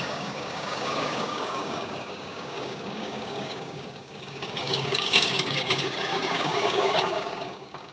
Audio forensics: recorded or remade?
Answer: remade